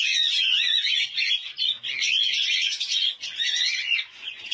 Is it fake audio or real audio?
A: fake